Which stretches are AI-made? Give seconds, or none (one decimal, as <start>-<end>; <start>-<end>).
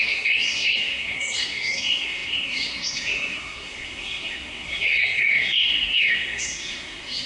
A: 0.0-7.3